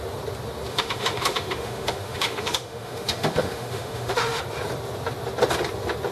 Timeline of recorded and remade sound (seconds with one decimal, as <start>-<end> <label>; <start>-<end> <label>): 0.0-0.7 recorded; 0.7-4.4 remade; 4.4-6.1 recorded